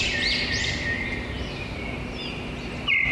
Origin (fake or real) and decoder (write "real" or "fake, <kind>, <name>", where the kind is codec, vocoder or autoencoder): real